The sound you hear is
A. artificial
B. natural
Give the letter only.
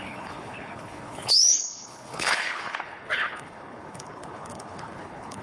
A